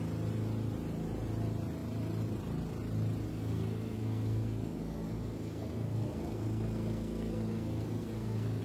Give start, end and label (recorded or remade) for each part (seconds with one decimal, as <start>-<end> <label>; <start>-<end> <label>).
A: 0.0-3.3 recorded; 3.3-8.6 remade